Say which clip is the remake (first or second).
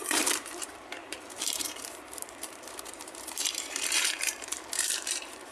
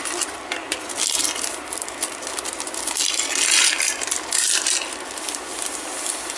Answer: first